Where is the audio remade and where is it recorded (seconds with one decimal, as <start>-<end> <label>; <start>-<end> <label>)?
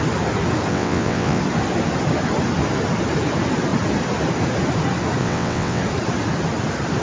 0.0-0.7 recorded; 0.7-1.4 remade; 1.4-5.2 recorded; 5.2-5.8 remade; 5.8-7.0 recorded